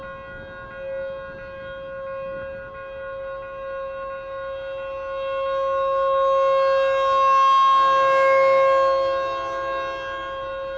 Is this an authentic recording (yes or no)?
yes